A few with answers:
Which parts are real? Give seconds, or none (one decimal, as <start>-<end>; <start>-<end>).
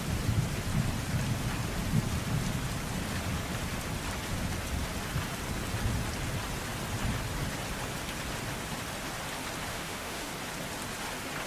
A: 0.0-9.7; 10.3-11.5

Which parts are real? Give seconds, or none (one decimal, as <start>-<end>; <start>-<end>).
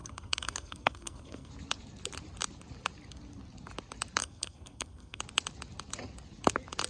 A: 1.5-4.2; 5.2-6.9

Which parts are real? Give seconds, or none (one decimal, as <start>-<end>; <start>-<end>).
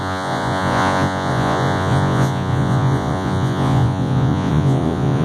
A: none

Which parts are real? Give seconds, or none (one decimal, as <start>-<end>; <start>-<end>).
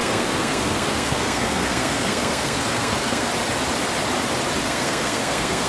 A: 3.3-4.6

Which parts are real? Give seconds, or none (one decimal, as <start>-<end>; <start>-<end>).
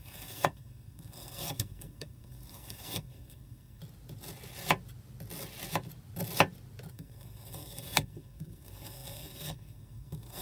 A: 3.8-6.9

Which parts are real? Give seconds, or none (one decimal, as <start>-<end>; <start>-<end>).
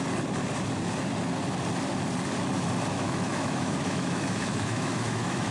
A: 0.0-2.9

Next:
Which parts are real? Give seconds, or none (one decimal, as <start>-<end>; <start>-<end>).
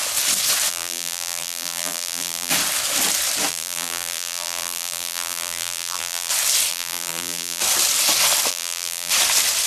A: 0.0-0.7; 2.5-3.5; 6.3-6.7; 7.6-8.5; 9.1-9.7